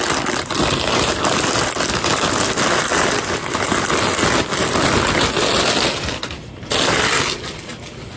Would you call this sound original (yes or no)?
yes